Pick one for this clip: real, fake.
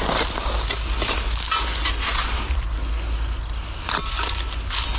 real